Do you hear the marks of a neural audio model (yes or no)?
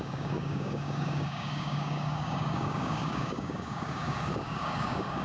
yes